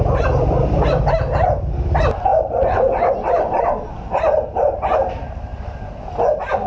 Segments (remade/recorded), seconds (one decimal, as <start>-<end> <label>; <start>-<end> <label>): 0.0-2.3 recorded; 2.3-3.6 remade; 3.6-6.7 recorded